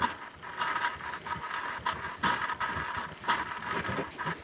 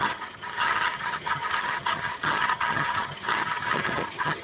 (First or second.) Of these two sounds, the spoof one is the second